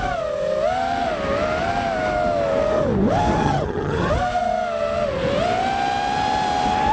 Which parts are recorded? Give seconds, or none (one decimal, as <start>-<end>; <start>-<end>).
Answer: 0.0-3.4; 4.1-6.9